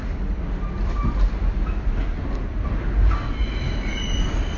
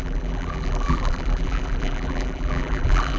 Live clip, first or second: first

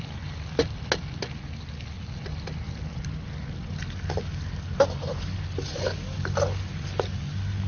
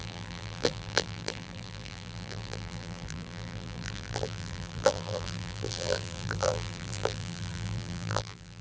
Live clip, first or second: first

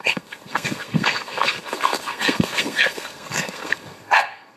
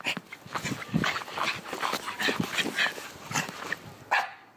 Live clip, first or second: second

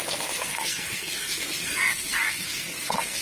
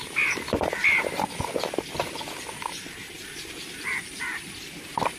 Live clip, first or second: second